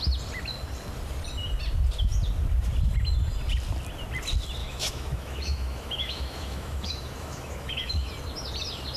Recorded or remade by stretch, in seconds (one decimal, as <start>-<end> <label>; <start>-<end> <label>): 0.0-4.6 recorded; 4.6-8.1 remade; 8.1-9.0 recorded